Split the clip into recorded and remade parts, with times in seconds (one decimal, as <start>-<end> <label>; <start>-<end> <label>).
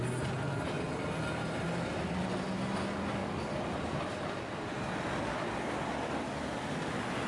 0.0-7.3 recorded